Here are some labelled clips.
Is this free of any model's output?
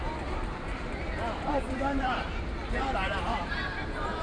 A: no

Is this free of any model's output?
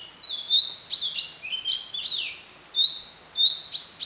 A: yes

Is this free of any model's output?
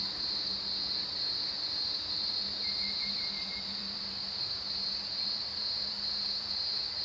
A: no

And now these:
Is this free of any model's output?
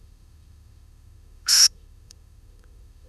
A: no